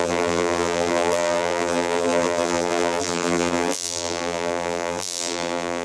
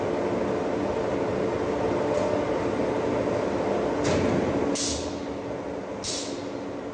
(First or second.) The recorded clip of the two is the second